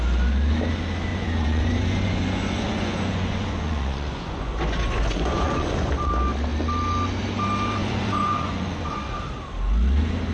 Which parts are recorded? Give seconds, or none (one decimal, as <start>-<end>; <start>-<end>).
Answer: 0.0-1.1; 6.1-7.8; 9.2-10.3